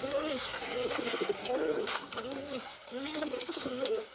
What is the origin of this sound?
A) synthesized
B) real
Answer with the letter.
A